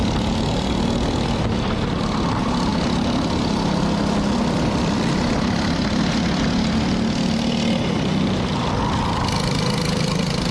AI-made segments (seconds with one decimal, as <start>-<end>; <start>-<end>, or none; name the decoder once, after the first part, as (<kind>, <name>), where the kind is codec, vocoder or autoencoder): none

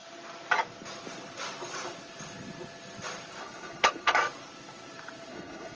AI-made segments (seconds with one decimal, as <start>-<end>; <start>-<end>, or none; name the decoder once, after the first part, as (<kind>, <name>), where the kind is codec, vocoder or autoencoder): 3.4-4.2 (codec, HILCodec); 5.3-5.7

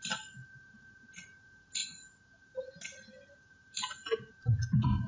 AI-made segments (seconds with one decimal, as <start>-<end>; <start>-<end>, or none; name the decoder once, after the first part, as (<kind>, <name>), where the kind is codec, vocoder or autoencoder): none

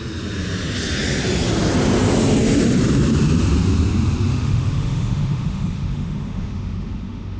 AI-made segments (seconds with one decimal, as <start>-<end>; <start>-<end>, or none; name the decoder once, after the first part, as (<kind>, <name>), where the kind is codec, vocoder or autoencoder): 4.3-7.4 (autoencoder, DAC-VAE)

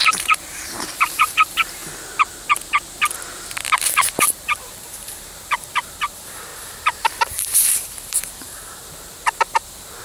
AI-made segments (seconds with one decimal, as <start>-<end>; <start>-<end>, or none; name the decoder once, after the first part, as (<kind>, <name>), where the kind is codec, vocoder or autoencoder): 0.0-1.8 (vocoder, BigVGAN v2); 3.9-10.0

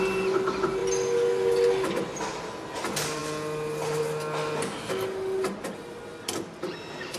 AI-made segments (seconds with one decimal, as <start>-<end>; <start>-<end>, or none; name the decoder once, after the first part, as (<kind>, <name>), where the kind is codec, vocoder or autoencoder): none

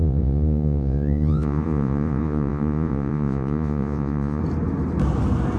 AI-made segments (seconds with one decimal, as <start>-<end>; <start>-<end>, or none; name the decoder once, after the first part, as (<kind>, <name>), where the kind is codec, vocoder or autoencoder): 0.0-4.4 (vocoder, Vocos)

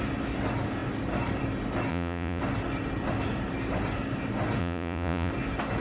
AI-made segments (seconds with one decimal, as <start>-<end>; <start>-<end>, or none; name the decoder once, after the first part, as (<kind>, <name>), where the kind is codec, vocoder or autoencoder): 1.9-2.4 (vocoder, Vocos); 4.6-5.3